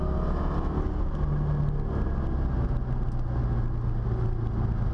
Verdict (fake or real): real